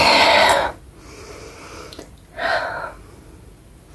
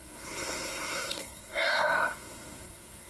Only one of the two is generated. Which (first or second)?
second